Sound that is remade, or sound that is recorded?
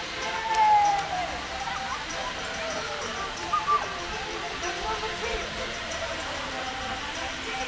remade